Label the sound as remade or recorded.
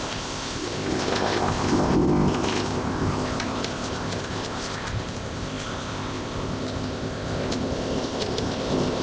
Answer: remade